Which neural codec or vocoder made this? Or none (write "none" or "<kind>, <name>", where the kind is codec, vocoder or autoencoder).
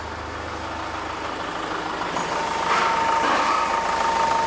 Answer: none